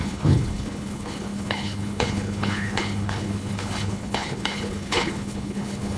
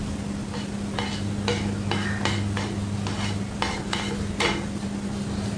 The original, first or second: second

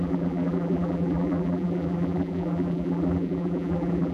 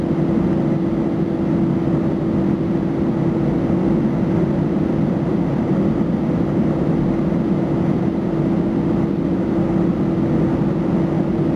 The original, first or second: second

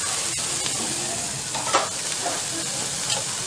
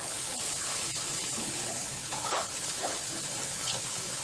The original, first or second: first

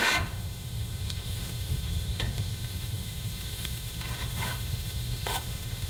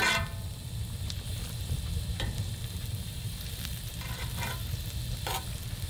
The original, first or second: second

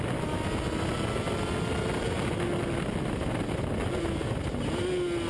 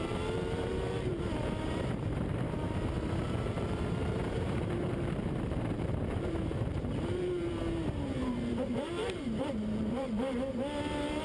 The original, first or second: first